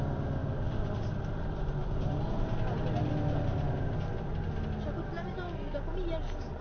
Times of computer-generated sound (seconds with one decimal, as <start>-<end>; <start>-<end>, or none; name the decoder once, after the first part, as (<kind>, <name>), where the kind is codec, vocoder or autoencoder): 0.4-1.0 (vocoder, BigVGAN v2)